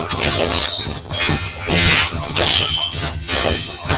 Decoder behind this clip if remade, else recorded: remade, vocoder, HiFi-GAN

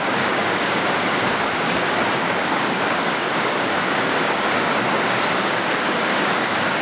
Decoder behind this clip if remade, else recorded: remade, codec, DAC